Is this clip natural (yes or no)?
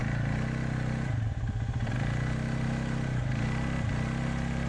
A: yes